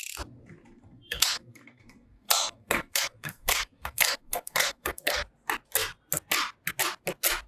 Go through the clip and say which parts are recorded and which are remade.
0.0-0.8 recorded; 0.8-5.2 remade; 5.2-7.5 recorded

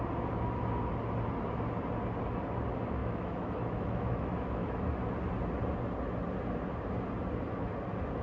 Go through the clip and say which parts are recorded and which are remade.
0.0-3.0 recorded; 3.0-4.8 remade; 4.8-8.2 recorded

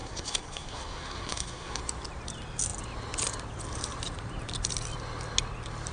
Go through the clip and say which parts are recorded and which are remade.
0.0-1.8 remade; 1.8-5.9 recorded